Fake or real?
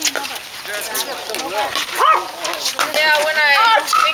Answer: real